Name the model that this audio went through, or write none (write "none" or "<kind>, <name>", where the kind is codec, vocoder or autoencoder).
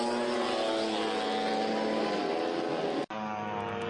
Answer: none